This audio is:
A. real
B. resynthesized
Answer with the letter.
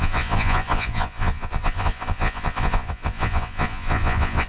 B